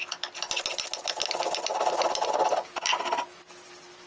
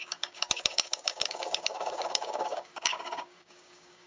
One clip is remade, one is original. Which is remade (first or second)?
second